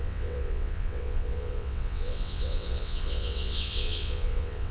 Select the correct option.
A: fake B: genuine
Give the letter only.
A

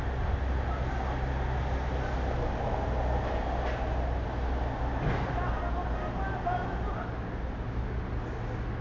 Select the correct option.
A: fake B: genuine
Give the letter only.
B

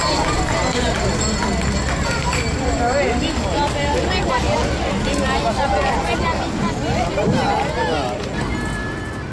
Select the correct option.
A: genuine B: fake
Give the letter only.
A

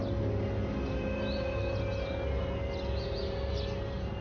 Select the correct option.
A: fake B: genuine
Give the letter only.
B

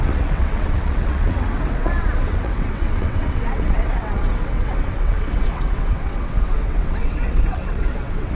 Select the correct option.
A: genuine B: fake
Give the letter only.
B